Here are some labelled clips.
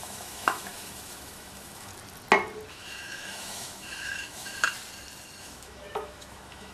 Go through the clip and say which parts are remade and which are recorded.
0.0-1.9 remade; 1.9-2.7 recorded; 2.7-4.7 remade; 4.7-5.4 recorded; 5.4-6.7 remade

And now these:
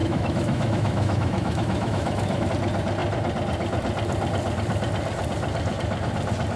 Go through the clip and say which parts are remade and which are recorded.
0.0-2.5 remade; 2.5-6.6 recorded